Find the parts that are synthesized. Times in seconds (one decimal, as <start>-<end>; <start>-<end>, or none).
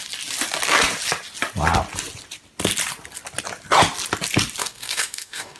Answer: 4.6-5.6